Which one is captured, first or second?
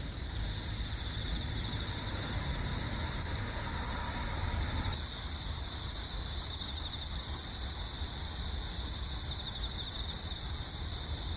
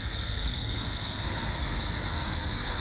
first